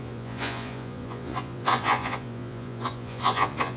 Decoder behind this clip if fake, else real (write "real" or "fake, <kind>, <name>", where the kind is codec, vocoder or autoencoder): fake, vocoder, Vocos